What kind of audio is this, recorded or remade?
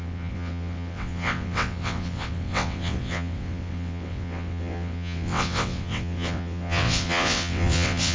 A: remade